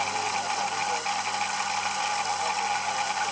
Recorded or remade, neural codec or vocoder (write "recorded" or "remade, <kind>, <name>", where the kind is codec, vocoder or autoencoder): recorded